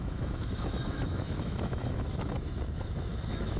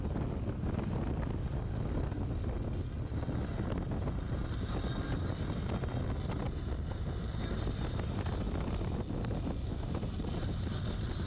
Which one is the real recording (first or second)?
second